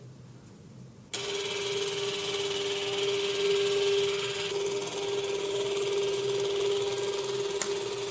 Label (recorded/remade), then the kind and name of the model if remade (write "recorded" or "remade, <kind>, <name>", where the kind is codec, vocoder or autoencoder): recorded